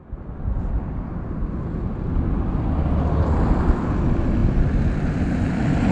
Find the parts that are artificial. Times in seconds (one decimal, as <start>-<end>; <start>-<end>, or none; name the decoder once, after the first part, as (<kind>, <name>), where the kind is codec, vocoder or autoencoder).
none